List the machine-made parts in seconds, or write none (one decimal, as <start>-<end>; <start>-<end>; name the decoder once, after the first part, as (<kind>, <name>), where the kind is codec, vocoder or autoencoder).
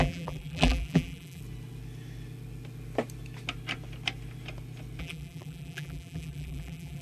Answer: 0.0-1.4 (vocoder, BigVGAN v2); 5.0-7.0